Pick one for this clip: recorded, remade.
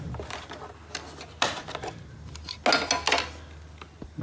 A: recorded